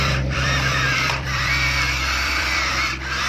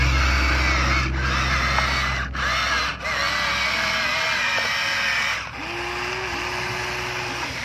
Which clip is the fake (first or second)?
first